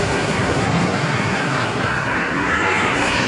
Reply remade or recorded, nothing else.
remade